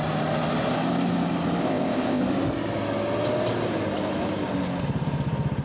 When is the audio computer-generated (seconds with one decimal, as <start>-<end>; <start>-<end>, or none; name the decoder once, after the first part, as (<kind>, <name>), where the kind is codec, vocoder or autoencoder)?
1.6-2.2 (codec, ZipCodec)